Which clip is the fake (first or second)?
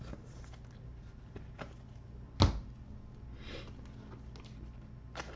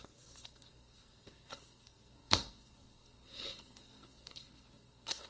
second